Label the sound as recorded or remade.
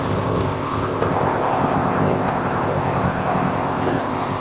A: remade